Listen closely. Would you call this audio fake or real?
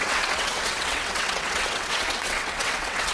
fake